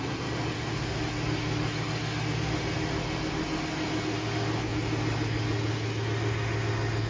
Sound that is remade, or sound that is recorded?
recorded